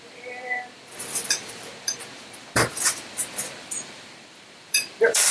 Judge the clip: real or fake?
fake